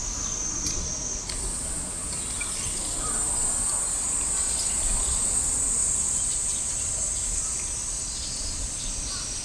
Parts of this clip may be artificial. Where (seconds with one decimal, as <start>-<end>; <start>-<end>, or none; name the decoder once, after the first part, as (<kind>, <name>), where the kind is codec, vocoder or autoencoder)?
none